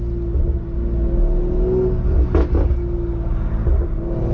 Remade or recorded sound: recorded